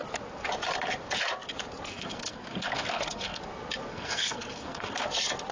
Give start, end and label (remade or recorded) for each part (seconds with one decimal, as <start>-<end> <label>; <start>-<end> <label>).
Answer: 0.0-1.9 recorded; 1.9-3.4 remade; 3.4-3.9 recorded; 3.9-5.0 remade; 5.0-5.5 recorded